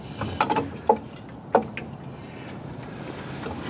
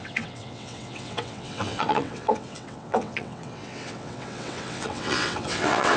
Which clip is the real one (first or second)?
first